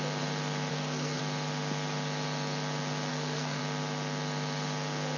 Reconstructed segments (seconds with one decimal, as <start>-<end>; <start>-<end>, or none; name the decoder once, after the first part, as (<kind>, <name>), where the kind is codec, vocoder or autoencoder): 0.7-1.2 (codec, SNAC); 3.1-3.6